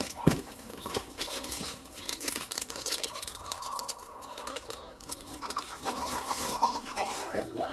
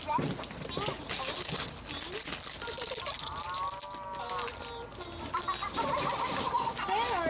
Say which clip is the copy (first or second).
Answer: first